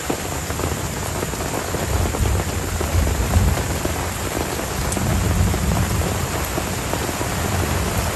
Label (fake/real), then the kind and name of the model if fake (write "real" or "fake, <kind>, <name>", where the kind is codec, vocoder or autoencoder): real